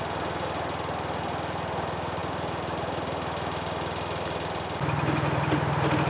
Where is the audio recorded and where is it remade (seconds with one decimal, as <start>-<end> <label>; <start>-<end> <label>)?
0.0-6.1 recorded